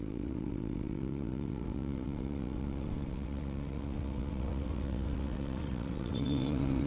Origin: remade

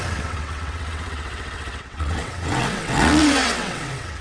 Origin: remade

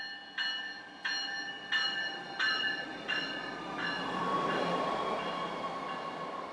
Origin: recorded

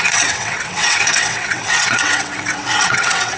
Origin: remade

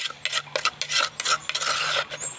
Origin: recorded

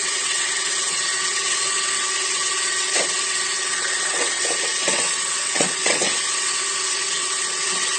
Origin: remade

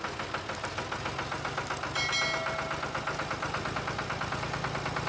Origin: recorded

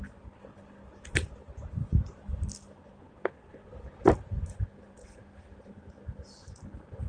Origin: recorded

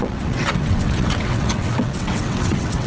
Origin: remade